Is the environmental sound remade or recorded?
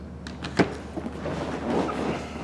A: recorded